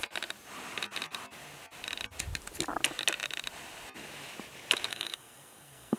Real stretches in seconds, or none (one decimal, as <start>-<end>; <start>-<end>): 0.0-4.9